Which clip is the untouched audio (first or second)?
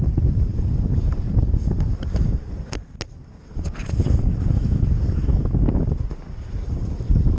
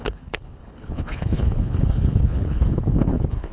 first